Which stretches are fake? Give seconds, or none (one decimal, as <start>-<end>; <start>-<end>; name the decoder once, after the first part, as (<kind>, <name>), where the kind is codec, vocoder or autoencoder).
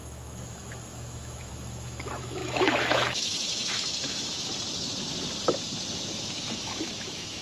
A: 0.0-4.5 (autoencoder, DAC-VAE); 6.4-7.4